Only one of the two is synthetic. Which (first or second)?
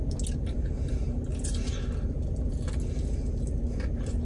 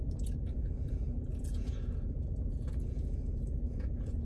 second